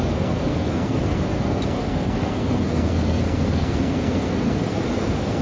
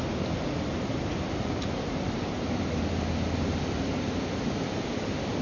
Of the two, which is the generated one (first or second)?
first